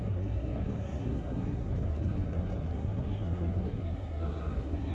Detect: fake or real fake